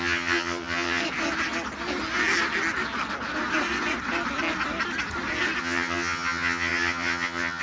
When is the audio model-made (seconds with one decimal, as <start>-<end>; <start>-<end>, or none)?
0.0-1.0; 5.6-7.6

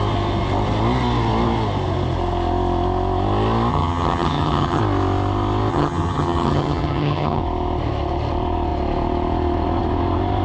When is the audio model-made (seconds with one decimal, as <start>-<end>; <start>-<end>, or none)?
3.7-4.8; 5.7-7.4

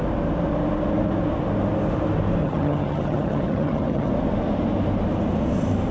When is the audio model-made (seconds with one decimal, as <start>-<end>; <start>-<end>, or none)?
2.4-4.1